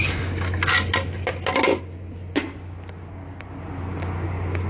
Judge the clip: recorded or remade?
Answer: recorded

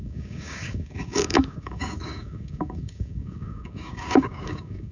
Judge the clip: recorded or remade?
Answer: remade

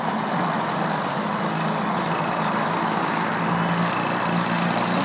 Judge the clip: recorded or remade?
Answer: recorded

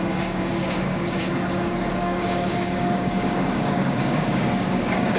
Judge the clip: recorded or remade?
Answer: remade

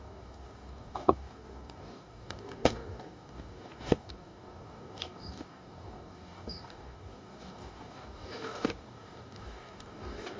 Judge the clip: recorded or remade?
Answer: remade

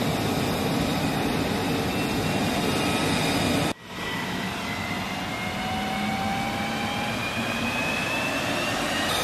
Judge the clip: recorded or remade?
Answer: recorded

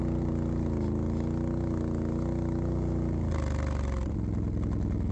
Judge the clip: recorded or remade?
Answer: recorded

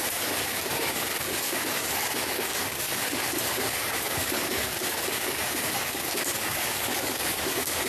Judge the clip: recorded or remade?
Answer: remade